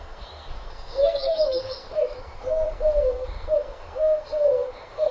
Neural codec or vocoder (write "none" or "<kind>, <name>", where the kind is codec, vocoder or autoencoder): codec, SNAC